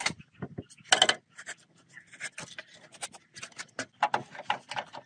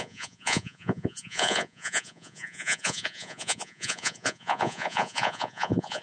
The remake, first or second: second